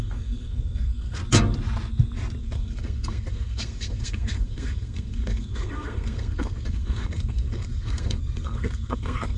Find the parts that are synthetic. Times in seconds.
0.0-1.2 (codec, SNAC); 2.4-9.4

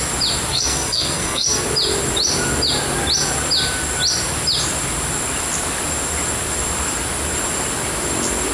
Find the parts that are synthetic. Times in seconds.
0.5-1.6 (codec, SNAC)

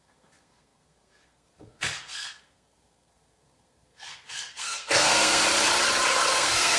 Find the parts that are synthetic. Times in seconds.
0.0-5.4 (codec, SNAC); 6.3-6.8

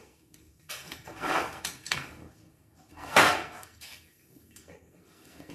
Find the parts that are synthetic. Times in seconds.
0.0-5.5 (codec, SNAC)

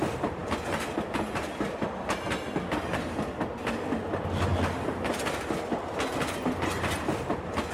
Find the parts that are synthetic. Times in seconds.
none